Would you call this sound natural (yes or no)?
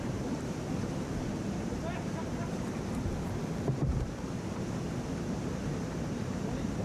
no